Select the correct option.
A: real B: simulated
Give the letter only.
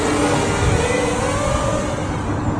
A